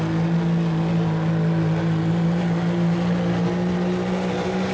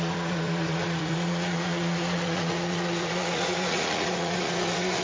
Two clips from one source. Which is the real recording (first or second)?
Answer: first